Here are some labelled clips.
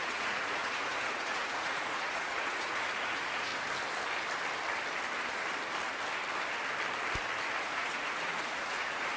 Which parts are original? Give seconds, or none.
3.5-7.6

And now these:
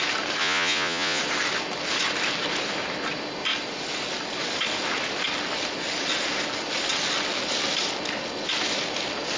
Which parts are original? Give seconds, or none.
0.0-0.4; 1.2-9.4

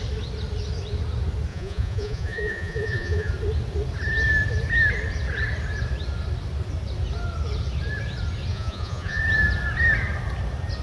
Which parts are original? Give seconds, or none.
0.0-1.5; 3.3-8.5; 9.2-10.8

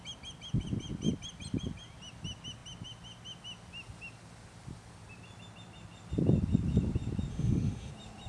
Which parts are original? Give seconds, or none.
0.0-7.3; 7.9-8.3

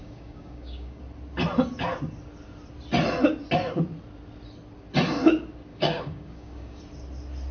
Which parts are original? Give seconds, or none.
1.0-5.7; 6.8-7.5